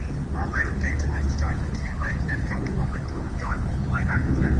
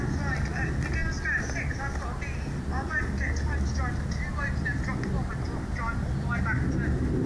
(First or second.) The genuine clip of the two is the second